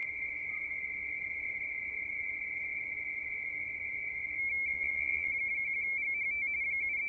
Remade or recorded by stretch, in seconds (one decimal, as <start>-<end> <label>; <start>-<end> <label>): 0.0-4.7 recorded; 4.7-5.3 remade; 5.3-7.1 recorded